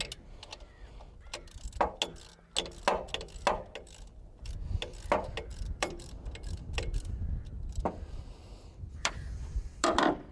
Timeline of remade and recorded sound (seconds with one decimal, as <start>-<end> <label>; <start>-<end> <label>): 0.0-5.5 recorded; 5.5-10.3 remade